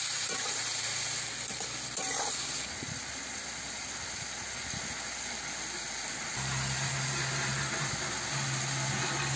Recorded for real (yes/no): yes